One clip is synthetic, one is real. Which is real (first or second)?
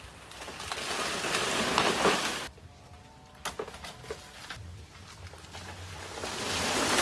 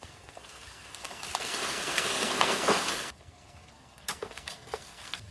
first